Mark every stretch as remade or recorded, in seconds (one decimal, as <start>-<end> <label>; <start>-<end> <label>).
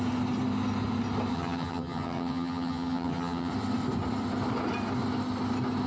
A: 0.0-1.3 recorded; 1.3-3.5 remade; 3.5-5.9 recorded